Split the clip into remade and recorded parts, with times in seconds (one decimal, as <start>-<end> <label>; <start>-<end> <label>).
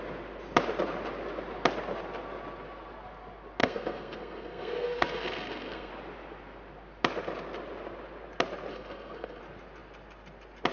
0.0-3.6 recorded; 3.6-5.9 remade; 5.9-8.7 recorded; 8.7-9.4 remade; 9.4-10.7 recorded